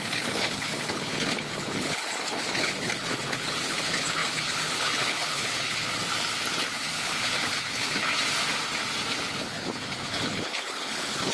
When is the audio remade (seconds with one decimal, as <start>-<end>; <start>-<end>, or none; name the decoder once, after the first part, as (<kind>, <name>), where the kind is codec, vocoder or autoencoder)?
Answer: 0.0-6.0 (codec, HILCodec); 6.6-8.1; 9.1-11.3